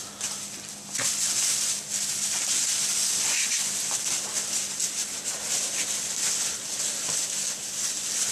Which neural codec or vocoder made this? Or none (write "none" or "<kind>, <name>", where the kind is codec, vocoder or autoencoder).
none